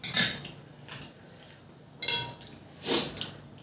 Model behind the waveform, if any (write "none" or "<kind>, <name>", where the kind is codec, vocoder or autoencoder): none